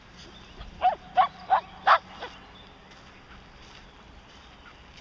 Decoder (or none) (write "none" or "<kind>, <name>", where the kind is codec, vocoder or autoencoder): none